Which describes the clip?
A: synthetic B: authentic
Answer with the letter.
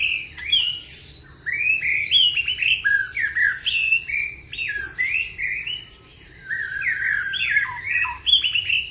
B